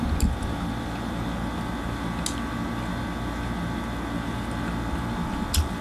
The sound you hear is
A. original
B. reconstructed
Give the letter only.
A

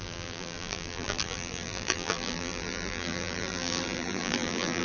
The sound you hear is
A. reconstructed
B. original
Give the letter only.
A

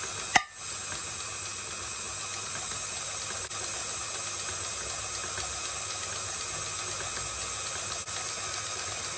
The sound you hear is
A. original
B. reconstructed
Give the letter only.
A